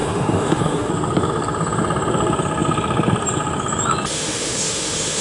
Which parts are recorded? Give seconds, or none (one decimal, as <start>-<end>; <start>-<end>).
0.9-4.1